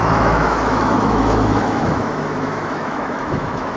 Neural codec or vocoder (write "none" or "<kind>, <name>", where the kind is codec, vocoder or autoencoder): autoencoder, DAC-VAE